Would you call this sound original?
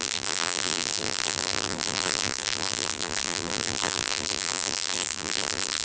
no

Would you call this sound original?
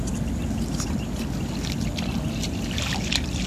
yes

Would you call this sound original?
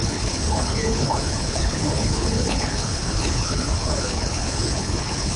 no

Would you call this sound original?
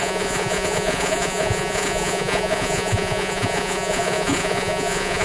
no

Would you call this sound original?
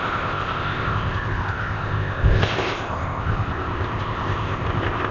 no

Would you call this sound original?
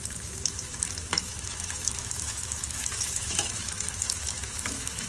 no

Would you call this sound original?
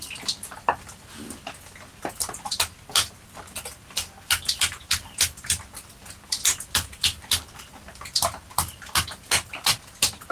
yes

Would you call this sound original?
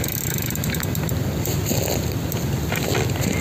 yes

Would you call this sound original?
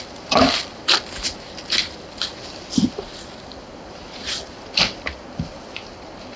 yes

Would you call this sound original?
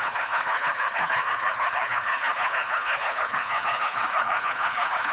no